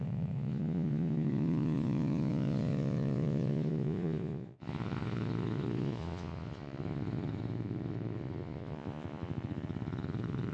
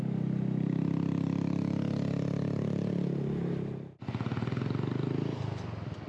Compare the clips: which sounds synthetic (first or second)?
first